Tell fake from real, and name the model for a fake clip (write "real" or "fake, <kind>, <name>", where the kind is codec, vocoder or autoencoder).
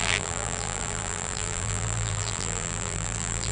fake, vocoder, BigVGAN v2